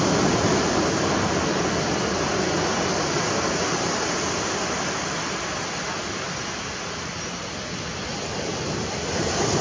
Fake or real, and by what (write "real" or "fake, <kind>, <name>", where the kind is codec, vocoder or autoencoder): real